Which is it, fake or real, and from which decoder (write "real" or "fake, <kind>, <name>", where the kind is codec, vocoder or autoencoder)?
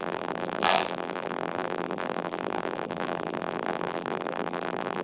fake, vocoder, BigVGAN v2